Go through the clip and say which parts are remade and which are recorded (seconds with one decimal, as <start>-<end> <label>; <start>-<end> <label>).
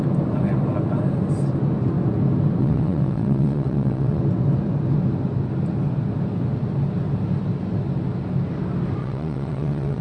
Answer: 0.0-2.6 recorded; 2.6-4.2 remade; 4.2-9.0 recorded; 9.0-10.0 remade